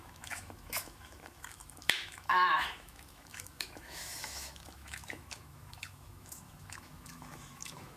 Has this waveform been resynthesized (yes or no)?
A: yes